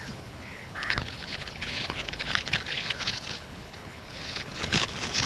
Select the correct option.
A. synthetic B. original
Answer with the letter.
A